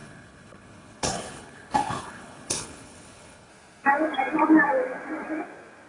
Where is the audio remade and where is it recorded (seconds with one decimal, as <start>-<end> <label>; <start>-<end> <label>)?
0.0-3.5 remade; 3.5-5.9 recorded